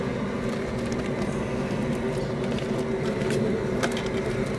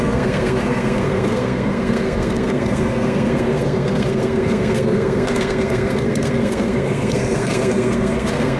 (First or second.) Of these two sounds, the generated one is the second